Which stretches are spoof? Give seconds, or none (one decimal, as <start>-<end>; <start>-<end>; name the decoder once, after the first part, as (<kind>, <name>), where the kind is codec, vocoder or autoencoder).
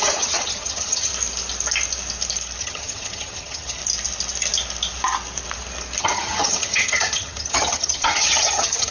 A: 0.0-1.1 (vocoder, HiFi-GAN); 2.6-3.8; 6.0-8.9